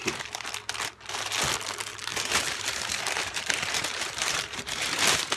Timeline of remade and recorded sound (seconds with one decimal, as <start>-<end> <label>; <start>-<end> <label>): 0.0-0.5 remade; 0.5-2.1 recorded; 2.1-5.4 remade